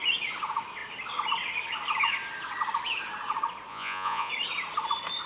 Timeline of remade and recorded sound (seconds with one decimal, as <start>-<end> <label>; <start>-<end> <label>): 0.0-3.7 recorded; 3.7-4.3 remade; 4.3-5.3 recorded